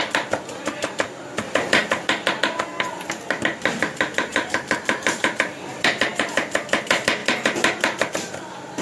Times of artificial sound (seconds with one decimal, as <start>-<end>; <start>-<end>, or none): 4.3-6.1